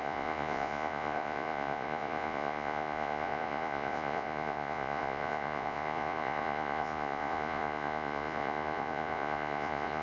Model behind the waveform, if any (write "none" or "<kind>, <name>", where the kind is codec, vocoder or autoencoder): vocoder, Vocos